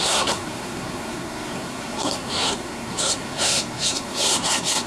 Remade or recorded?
remade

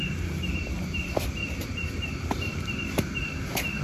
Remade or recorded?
recorded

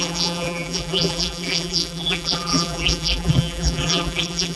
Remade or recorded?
remade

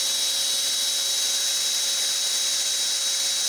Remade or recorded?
recorded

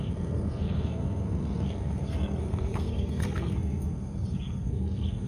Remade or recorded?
remade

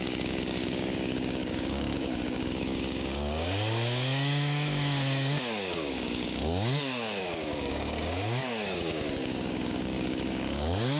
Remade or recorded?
remade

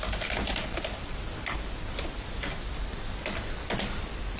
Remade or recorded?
recorded